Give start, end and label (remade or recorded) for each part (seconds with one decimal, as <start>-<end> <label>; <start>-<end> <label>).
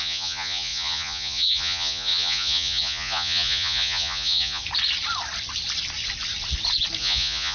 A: 0.0-4.6 remade; 4.6-7.0 recorded; 7.0-7.5 remade